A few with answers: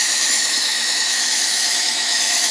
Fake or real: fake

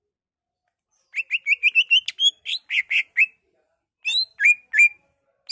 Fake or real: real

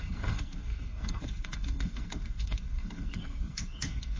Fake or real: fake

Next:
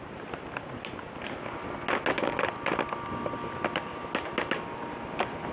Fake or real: real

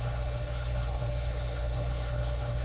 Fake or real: fake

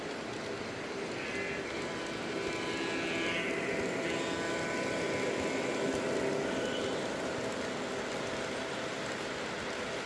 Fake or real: real